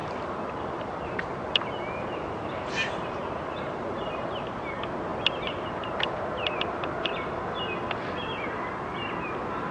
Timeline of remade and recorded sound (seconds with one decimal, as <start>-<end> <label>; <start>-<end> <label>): 0.0-1.3 remade; 1.3-2.6 recorded; 2.6-5.1 remade; 5.1-9.7 recorded